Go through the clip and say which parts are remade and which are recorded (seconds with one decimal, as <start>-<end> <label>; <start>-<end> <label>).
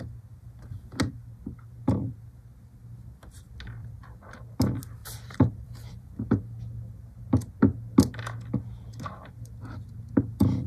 0.0-3.8 recorded; 3.8-4.4 remade; 4.4-5.0 recorded; 5.0-6.2 remade; 6.2-10.7 recorded